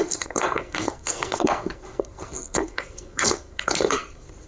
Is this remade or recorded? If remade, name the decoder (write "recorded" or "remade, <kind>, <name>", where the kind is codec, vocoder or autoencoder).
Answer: remade, codec, SNAC